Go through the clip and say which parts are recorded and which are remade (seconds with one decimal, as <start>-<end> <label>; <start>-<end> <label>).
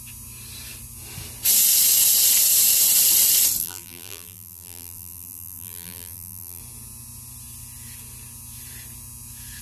0.0-3.6 recorded; 3.6-6.6 remade; 6.6-9.6 recorded